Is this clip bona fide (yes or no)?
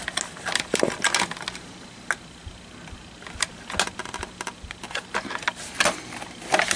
yes